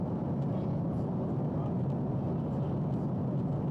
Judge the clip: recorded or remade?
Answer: recorded